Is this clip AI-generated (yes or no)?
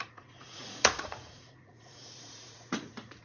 yes